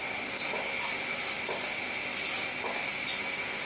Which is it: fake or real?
real